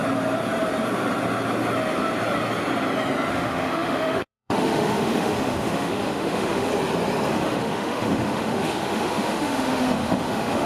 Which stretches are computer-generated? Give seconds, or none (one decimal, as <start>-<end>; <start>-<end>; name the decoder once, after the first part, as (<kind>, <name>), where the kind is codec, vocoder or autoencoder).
3.3-6.7 (autoencoder, DAC-VAE); 7.3-10.7